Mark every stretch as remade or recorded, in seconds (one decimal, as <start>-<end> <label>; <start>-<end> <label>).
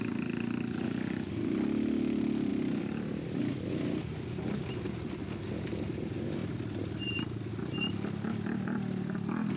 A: 0.0-9.6 recorded